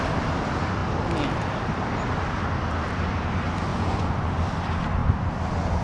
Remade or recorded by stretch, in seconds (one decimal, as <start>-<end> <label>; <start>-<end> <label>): 0.0-3.7 recorded; 3.7-4.3 remade; 4.3-5.8 recorded